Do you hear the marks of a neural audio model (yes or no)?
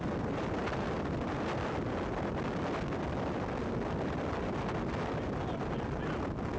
no